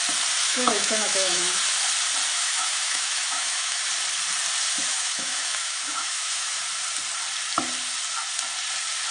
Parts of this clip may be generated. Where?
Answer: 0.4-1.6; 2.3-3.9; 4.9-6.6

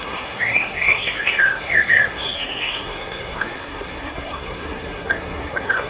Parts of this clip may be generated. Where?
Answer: 0.0-5.9

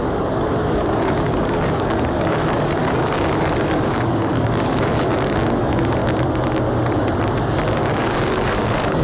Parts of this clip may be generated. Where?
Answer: 0.0-6.0; 7.7-9.0

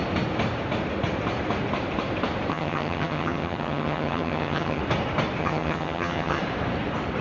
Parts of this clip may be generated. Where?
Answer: 2.5-4.8; 5.4-6.4

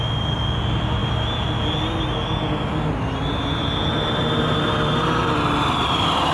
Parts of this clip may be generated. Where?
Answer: none

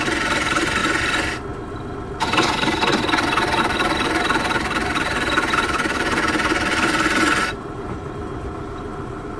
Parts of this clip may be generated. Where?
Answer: 0.0-0.8; 3.6-9.4

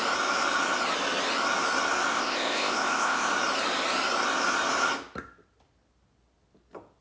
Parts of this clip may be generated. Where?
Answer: 2.1-3.3

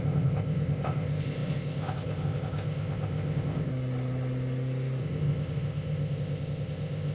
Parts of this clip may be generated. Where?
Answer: 0.0-3.7; 5.0-7.1